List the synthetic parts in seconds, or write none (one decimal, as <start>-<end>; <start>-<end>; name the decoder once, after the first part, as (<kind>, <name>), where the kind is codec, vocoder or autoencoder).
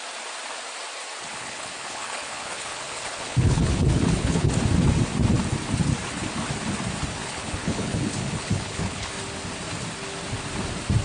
1.3-4.5 (codec, HILCodec); 7.2-9.1